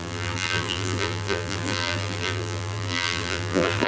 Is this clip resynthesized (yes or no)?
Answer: yes